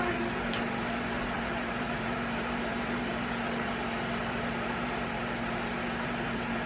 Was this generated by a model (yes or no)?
yes